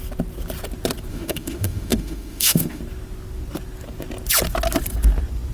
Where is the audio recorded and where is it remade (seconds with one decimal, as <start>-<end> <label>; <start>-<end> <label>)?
0.0-1.1 recorded; 1.1-2.8 remade; 2.8-5.5 recorded